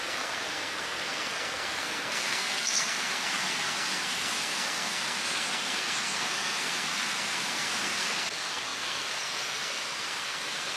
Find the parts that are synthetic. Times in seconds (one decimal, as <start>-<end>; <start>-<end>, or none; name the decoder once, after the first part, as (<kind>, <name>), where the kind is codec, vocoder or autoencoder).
0.0-10.8 (codec, SNAC)